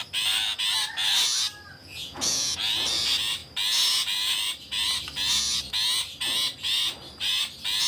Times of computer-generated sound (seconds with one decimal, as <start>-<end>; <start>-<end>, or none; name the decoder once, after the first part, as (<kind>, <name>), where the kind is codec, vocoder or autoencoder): 1.8-2.6 (vocoder, Vocos)